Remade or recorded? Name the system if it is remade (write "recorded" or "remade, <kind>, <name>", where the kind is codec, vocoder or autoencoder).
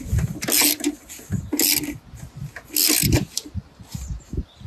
recorded